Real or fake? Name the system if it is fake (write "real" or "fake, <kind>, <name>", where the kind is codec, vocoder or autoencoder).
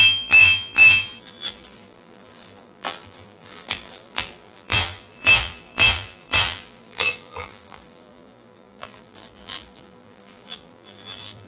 fake, vocoder, BigVGAN v2